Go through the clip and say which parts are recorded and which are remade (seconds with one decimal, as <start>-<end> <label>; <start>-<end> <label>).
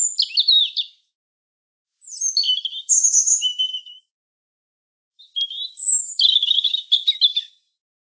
0.0-2.5 recorded; 2.5-6.6 remade; 6.6-7.0 recorded; 7.0-8.2 remade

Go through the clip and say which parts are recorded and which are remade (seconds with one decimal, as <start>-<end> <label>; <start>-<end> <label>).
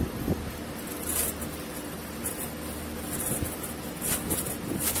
0.0-5.0 recorded